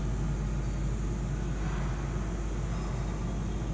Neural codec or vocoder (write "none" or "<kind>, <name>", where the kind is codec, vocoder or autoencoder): none